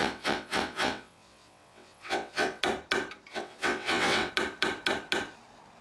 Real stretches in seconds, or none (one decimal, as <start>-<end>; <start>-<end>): 2.6-3.3; 4.3-5.8